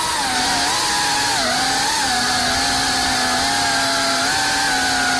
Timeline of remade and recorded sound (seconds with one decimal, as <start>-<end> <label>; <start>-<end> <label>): 0.0-5.2 recorded